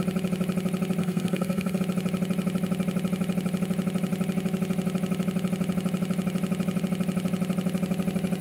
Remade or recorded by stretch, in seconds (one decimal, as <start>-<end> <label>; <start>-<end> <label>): 0.0-1.0 recorded; 1.0-1.8 remade; 1.8-8.4 recorded